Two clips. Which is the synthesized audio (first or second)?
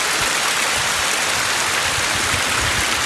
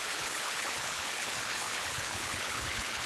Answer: second